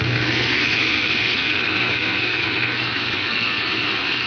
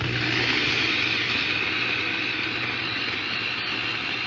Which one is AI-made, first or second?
first